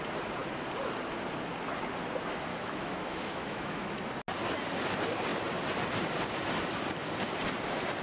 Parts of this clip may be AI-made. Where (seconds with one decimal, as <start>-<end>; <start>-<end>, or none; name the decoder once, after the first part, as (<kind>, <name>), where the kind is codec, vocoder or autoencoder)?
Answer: 2.5-4.1 (autoencoder, DAC-VAE)